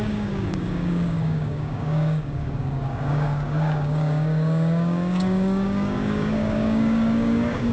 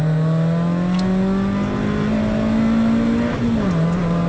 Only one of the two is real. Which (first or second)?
second